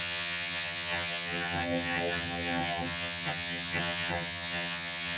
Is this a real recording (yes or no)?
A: no